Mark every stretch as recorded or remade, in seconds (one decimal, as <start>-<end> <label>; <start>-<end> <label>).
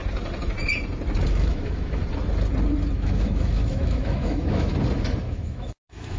0.0-1.3 recorded; 1.3-2.0 remade; 2.0-2.9 recorded; 2.9-4.7 remade; 4.7-5.2 recorded; 5.2-6.2 remade